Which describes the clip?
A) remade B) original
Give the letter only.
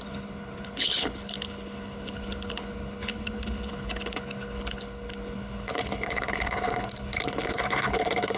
A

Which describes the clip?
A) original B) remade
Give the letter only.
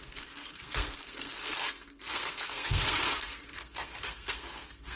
B